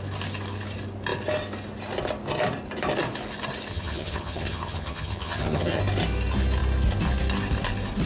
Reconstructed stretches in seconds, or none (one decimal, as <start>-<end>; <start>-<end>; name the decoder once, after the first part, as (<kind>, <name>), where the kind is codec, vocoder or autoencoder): 3.7-5.8 (vocoder, HiFi-GAN)